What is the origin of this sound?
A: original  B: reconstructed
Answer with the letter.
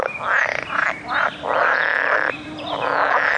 A